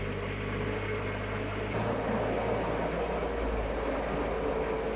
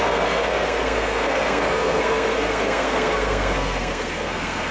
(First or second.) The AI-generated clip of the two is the second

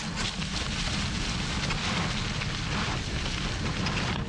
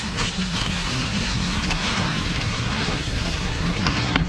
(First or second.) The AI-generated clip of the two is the second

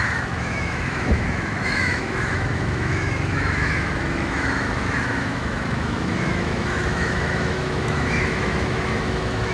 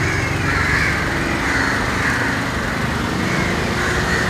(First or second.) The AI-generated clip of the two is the first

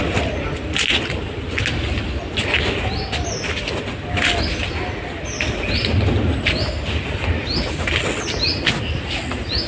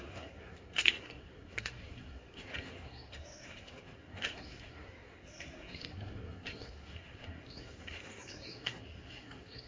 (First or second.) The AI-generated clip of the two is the second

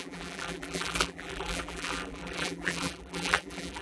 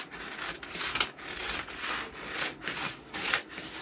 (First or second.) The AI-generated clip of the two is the first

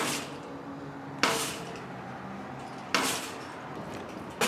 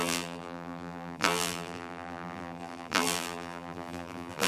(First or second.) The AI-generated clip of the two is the second